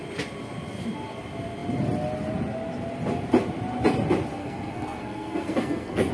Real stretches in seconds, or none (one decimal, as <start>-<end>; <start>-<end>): 0.0-4.4

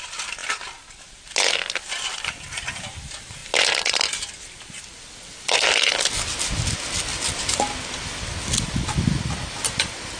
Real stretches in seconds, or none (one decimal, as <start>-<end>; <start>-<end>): 0.0-10.2

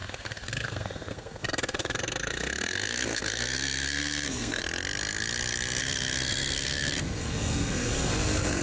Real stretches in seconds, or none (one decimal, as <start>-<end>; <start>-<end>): 4.6-5.8

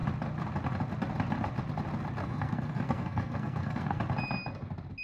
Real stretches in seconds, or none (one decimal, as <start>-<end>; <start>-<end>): 0.0-2.2; 4.0-5.0

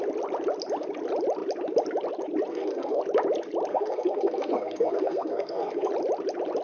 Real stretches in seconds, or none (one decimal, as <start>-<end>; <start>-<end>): 0.0-2.5; 3.0-3.7; 5.9-6.6